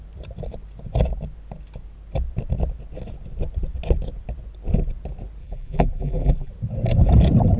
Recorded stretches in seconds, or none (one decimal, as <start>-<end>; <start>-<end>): 0.0-5.4; 6.5-7.6